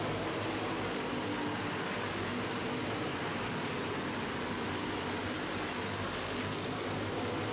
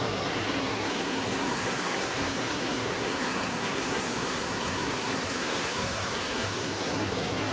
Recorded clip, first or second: first